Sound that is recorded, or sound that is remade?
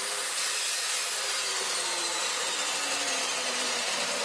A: remade